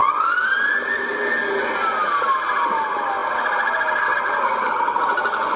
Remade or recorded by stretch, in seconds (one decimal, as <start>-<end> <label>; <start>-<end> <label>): 0.0-5.6 recorded